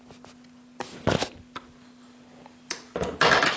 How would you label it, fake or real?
real